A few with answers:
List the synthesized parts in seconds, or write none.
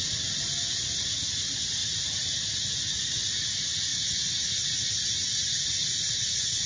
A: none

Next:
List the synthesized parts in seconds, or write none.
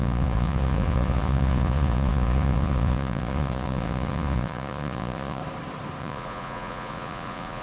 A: 0.0-5.4; 6.0-7.6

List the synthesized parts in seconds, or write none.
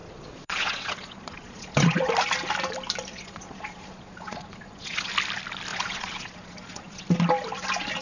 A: 0.0-2.1; 3.1-5.1; 5.7-7.0